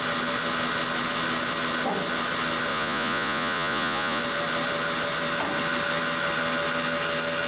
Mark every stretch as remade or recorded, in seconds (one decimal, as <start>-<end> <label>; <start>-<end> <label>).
0.0-2.7 recorded; 2.7-4.2 remade; 4.2-7.5 recorded